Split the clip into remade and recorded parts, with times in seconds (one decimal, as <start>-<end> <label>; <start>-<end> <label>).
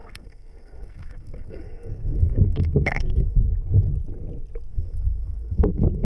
0.0-3.5 remade; 3.5-4.7 recorded; 4.7-6.0 remade